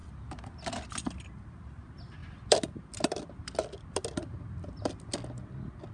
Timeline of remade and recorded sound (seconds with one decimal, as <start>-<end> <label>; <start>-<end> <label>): 0.0-5.9 recorded